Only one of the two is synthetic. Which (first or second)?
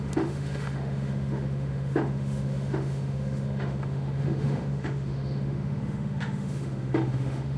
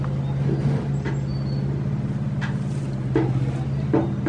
first